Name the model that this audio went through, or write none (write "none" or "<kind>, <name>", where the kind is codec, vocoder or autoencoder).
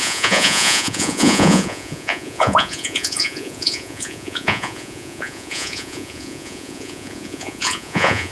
vocoder, Vocos